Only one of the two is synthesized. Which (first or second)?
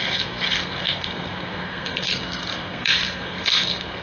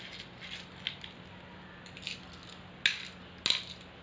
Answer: first